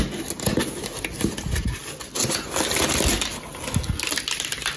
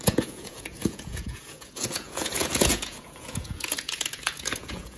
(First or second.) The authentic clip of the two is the first